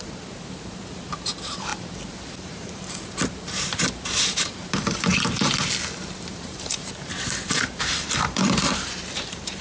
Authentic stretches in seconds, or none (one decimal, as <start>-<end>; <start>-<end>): 5.1-6.1